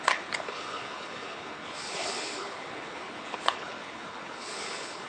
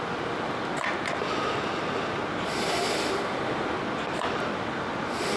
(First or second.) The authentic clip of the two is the second